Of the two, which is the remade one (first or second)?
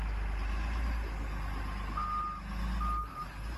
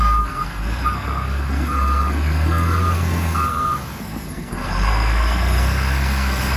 second